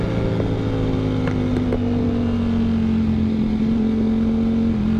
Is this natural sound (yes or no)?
yes